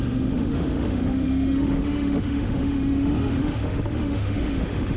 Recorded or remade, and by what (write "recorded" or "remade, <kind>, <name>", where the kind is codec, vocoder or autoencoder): remade, autoencoder, DAC-VAE